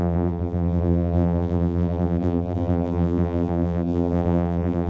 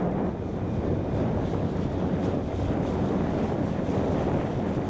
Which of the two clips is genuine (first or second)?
second